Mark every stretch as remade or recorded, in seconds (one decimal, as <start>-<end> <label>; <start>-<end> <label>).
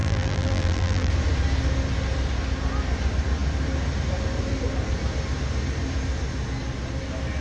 0.0-1.1 remade; 1.1-7.4 recorded